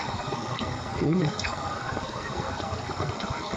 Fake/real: fake